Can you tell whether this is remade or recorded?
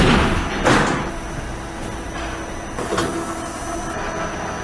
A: recorded